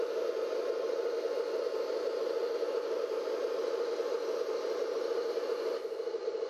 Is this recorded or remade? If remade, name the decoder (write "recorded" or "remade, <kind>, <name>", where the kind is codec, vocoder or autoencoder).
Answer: recorded